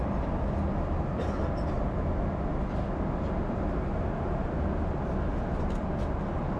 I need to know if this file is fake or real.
real